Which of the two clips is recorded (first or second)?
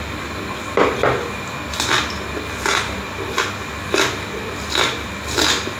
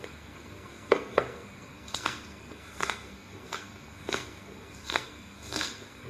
first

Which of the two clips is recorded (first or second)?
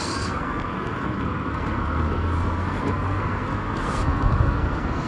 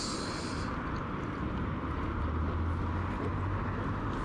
second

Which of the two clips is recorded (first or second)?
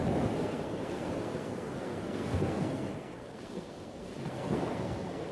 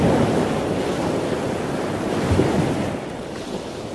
second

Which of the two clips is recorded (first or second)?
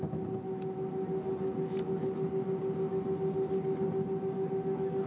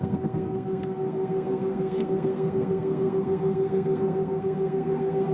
first